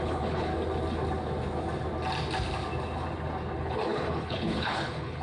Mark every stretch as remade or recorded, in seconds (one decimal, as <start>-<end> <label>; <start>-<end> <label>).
0.0-0.5 remade; 0.5-3.6 recorded; 3.6-5.2 remade